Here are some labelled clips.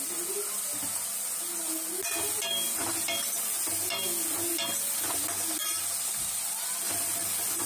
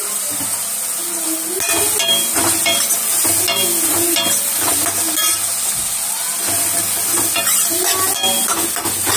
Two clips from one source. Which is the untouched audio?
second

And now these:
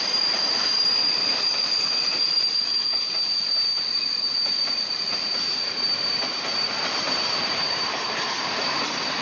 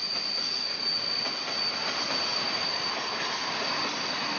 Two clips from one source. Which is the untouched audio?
second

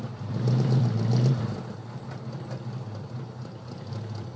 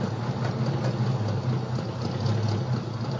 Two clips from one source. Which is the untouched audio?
second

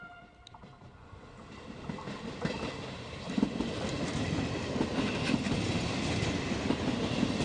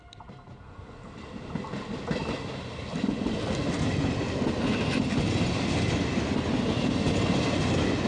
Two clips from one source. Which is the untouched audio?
second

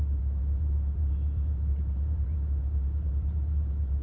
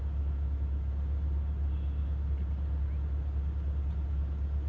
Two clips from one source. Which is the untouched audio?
second